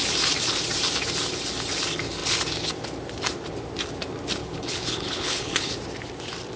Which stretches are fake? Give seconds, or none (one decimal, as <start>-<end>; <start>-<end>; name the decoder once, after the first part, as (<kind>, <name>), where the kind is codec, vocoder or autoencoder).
4.4-5.7 (codec, HILCodec)